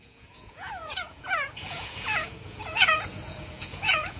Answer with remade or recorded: remade